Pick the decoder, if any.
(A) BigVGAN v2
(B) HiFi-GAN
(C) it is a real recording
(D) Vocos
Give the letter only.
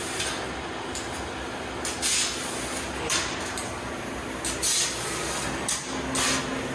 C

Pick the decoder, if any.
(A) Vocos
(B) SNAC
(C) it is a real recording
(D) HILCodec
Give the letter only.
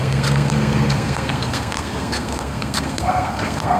B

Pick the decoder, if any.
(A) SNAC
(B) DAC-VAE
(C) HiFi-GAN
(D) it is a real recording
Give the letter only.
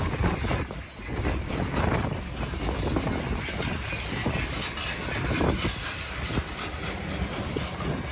D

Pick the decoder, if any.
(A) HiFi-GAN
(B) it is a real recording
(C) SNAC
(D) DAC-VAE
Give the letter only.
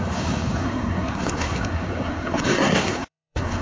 C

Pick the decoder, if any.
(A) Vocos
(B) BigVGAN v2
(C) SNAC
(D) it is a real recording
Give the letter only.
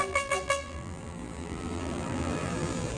B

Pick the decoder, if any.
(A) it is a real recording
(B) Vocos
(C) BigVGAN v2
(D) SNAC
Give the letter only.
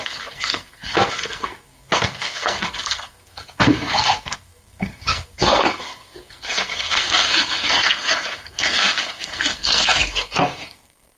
D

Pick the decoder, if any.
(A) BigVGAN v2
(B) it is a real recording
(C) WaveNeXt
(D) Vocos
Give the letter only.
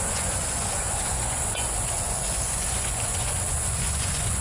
D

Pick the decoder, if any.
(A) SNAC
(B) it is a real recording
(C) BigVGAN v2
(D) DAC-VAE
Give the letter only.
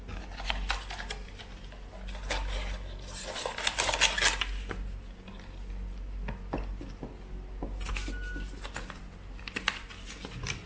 B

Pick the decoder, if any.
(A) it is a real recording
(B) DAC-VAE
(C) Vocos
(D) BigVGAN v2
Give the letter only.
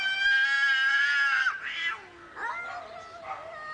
A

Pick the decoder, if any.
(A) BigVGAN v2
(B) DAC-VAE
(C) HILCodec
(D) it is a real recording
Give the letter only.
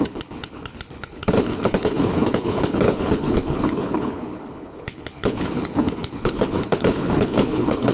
C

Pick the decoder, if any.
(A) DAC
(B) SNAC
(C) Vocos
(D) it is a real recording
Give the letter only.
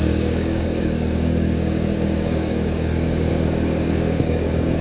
A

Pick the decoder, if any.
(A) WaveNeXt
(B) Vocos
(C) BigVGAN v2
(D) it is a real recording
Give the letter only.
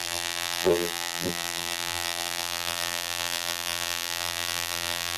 C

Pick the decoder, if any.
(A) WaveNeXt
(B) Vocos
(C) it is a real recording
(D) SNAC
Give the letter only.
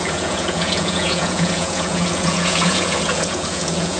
B